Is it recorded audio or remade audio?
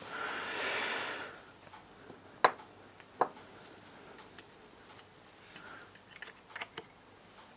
recorded